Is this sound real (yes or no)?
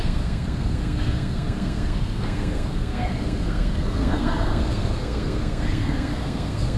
no